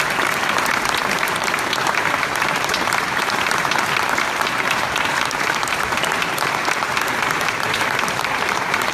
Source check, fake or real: fake